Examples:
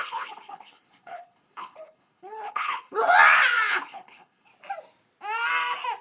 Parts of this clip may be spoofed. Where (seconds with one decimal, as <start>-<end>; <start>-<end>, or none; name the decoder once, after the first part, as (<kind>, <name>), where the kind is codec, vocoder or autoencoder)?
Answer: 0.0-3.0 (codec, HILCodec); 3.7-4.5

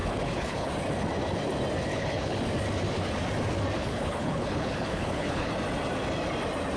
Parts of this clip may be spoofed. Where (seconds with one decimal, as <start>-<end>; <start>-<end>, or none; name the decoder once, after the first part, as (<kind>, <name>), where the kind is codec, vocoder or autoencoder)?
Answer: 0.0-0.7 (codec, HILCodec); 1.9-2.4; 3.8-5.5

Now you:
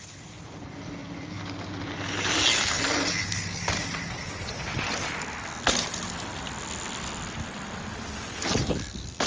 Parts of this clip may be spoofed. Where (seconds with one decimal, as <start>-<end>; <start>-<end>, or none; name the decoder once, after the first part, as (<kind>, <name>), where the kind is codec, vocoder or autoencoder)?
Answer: none

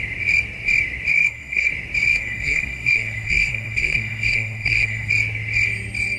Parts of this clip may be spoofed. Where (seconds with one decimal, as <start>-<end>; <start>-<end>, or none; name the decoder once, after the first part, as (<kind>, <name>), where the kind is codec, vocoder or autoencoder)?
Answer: 1.1-1.7 (codec, SNAC); 2.1-5.1

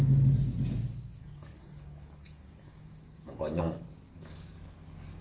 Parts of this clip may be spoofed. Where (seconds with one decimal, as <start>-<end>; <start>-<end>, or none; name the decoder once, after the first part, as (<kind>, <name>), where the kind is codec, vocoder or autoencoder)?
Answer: 1.2-3.6 (codec, DAC); 4.1-5.2

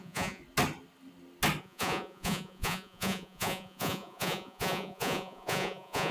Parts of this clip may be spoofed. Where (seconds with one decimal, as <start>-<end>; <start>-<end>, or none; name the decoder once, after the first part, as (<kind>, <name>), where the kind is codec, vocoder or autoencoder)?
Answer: 0.0-0.4 (vocoder, Vocos); 1.6-6.1